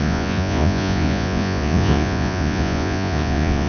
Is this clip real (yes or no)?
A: no